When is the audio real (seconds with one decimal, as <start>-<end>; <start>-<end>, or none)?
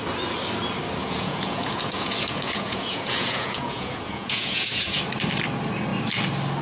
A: 0.0-1.0; 5.0-6.6